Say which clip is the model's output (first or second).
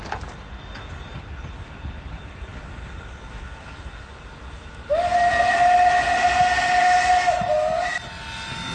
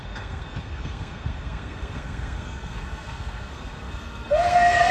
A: second